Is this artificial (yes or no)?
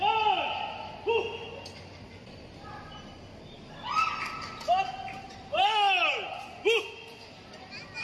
no